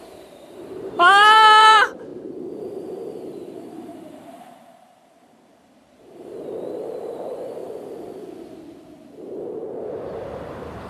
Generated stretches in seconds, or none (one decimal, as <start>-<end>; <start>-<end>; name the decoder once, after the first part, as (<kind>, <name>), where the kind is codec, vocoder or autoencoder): 0.0-7.6 (vocoder, BigVGAN v2); 9.4-10.9